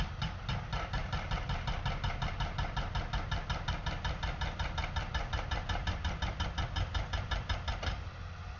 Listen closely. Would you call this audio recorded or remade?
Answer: recorded